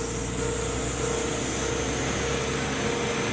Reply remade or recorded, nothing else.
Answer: recorded